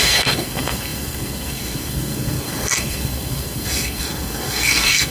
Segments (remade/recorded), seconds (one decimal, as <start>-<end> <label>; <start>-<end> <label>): 0.0-5.1 remade